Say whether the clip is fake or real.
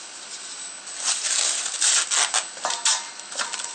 real